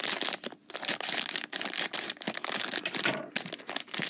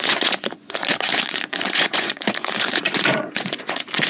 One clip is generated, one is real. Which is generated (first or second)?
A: second